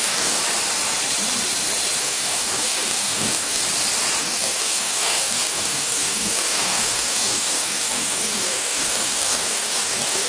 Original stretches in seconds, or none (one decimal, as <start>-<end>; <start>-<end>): 0.4-2.0; 3.6-4.2